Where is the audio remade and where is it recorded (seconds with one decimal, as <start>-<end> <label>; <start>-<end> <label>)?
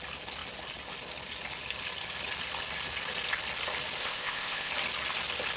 0.0-4.0 recorded; 4.0-4.7 remade; 4.7-5.6 recorded